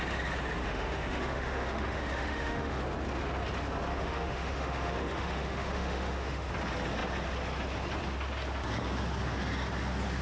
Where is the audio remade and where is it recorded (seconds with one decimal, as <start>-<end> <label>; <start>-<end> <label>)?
0.0-0.6 recorded; 0.6-2.8 remade; 2.8-3.9 recorded; 3.9-6.5 remade; 6.5-10.2 recorded